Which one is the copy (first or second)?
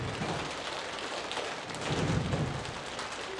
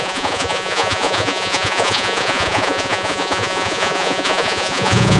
second